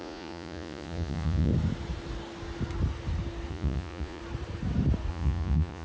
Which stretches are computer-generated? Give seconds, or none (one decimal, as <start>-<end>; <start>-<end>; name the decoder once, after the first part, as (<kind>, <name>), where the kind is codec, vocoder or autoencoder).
0.0-1.5 (vocoder, Vocos); 3.5-4.2; 5.1-5.8